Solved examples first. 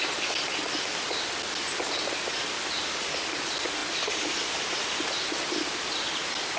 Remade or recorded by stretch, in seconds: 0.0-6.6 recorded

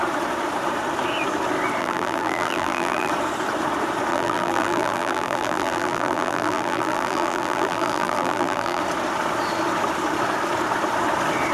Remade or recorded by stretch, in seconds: 0.0-1.8 recorded; 1.8-3.1 remade; 3.1-4.1 recorded; 4.1-8.8 remade; 8.8-11.5 recorded

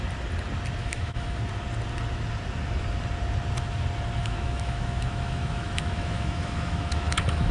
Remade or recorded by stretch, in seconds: 0.0-0.8 recorded; 0.8-1.4 remade; 1.4-4.2 recorded; 4.2-7.5 remade

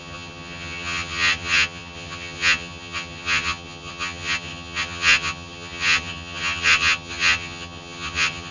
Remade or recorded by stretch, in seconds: 0.0-8.5 remade

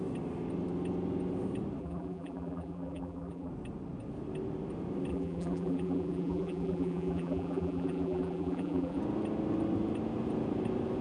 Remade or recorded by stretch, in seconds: 0.0-1.8 recorded; 1.8-3.5 remade; 3.5-5.1 recorded; 5.1-9.0 remade; 9.0-11.0 recorded